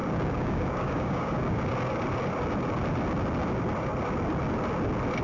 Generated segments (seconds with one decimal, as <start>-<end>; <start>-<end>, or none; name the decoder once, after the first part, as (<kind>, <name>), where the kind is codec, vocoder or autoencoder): 0.0-1.6 (codec, DAC)